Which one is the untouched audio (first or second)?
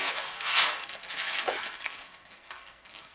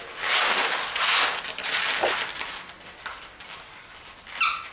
second